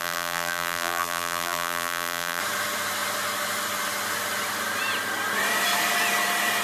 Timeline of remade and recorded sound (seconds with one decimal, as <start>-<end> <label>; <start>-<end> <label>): 0.0-2.4 remade; 2.4-6.6 recorded